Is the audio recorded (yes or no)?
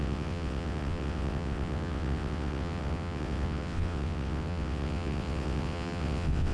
no